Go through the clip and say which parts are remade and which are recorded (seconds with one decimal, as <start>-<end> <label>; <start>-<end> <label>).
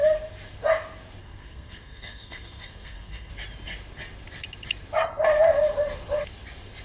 0.0-1.2 recorded; 1.2-3.3 remade; 3.3-6.8 recorded